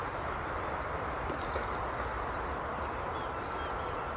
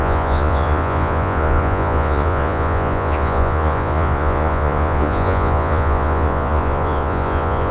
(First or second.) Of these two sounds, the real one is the first